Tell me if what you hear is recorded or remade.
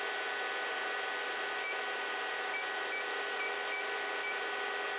recorded